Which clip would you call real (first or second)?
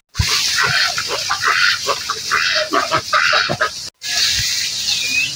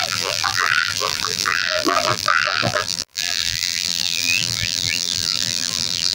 first